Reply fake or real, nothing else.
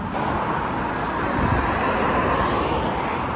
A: real